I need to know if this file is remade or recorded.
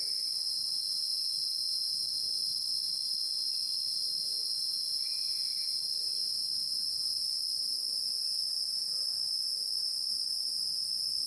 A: recorded